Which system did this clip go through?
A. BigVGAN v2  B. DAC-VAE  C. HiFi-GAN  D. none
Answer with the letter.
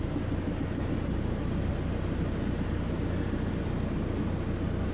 D